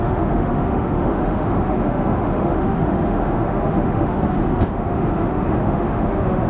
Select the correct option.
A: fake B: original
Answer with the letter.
A